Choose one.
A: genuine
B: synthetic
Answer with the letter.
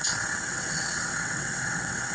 B